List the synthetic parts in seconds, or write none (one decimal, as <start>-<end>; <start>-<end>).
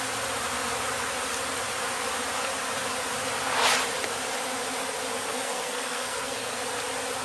5.3-6.6